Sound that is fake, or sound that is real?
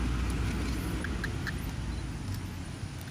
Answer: real